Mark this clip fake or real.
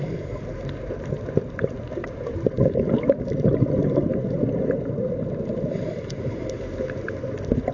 fake